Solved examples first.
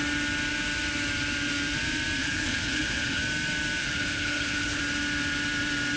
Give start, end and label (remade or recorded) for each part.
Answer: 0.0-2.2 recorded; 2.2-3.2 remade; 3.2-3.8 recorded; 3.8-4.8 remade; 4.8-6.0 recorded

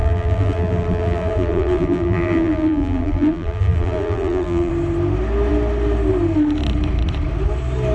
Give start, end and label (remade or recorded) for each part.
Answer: 0.0-4.7 remade; 4.7-7.9 recorded